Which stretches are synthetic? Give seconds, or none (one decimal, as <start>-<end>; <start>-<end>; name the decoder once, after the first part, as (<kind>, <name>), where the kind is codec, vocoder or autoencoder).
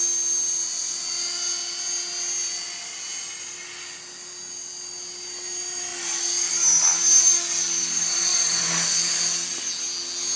none